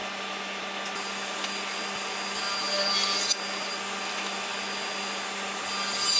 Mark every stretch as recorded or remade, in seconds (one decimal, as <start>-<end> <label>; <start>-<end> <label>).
0.0-6.2 recorded